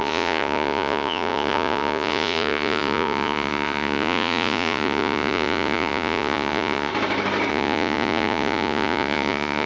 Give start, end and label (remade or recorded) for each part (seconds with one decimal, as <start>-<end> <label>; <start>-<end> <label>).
0.0-6.9 remade; 6.9-7.5 recorded; 7.5-9.7 remade